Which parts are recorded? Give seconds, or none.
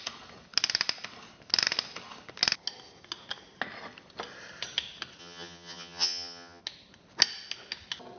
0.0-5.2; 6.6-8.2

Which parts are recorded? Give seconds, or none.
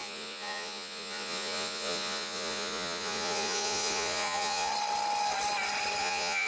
4.7-6.0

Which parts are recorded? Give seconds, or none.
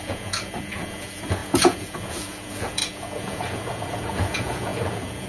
none